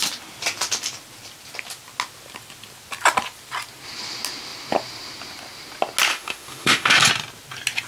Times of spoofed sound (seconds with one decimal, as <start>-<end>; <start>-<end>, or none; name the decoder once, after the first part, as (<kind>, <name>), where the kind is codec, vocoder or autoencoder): 6.1-7.0 (autoencoder, DAC-VAE)